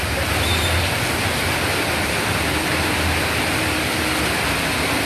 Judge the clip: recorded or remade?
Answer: recorded